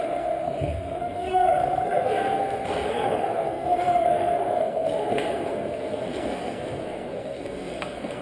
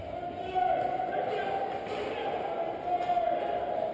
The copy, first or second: first